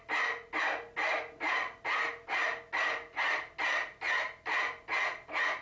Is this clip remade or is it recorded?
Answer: recorded